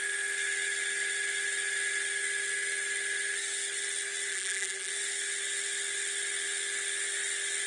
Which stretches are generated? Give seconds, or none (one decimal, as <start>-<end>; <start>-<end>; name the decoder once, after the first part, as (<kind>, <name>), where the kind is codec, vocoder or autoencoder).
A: 4.3-4.9 (vocoder, BigVGAN v2)